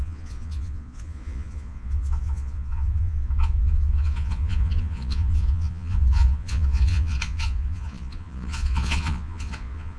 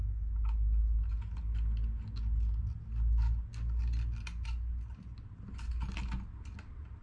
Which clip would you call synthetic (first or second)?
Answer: first